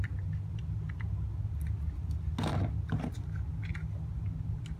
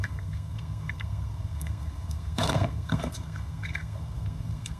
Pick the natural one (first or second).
first